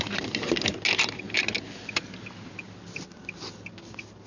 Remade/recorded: recorded